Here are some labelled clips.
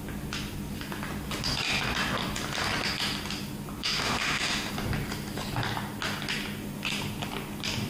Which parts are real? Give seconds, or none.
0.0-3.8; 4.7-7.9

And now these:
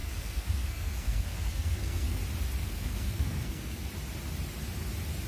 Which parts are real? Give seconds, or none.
2.2-2.6; 3.9-5.3